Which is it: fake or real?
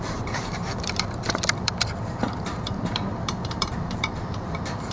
fake